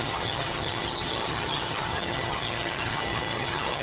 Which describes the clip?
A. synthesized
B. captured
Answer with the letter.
A